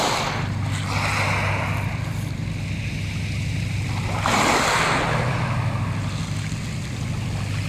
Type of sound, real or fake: real